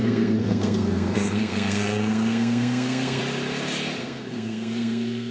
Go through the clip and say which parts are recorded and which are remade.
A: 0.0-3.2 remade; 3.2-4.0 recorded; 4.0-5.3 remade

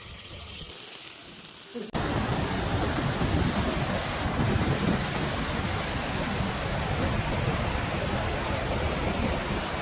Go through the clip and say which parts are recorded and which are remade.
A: 0.0-0.7 remade; 0.7-9.8 recorded

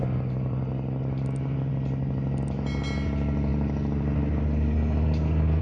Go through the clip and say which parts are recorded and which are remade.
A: 0.0-5.6 recorded

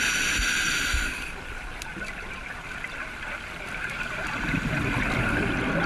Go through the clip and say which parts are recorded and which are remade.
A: 0.0-5.9 recorded

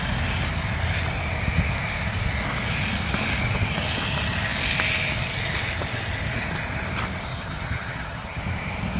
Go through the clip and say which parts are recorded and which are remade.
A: 0.0-7.3 recorded; 7.3-8.4 remade; 8.4-9.0 recorded